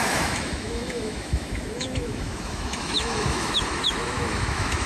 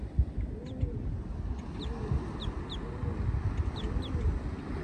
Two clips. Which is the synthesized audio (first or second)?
first